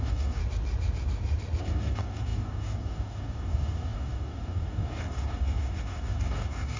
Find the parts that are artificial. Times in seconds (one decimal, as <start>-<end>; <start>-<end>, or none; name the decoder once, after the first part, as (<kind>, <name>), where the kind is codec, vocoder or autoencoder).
0.0-0.4 (codec, DAC); 1.6-6.8